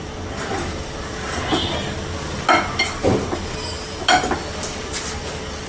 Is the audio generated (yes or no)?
no